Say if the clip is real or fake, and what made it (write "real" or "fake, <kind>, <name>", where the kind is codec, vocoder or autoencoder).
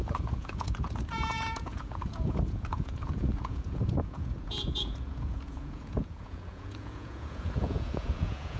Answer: fake, vocoder, Vocos